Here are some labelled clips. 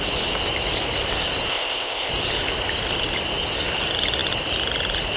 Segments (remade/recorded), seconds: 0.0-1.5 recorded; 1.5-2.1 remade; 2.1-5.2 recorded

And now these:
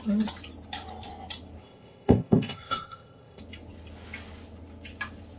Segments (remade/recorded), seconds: 0.0-1.6 recorded; 1.6-3.4 remade; 3.4-5.4 recorded

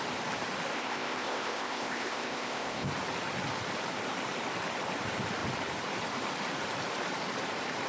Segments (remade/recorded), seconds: 0.0-0.7 recorded; 0.7-2.9 remade; 2.9-7.9 recorded

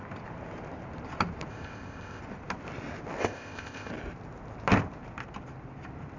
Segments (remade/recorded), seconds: 0.0-1.5 recorded; 1.5-2.2 remade; 2.2-3.2 recorded; 3.2-3.9 remade; 3.9-6.2 recorded